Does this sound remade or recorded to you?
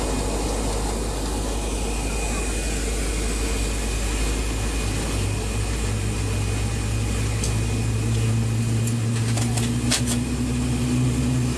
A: recorded